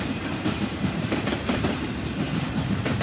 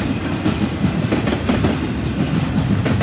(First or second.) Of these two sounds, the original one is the second